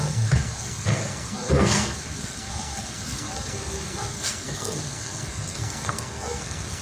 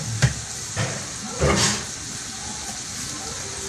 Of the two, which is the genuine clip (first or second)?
second